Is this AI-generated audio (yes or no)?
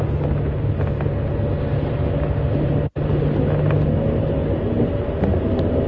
no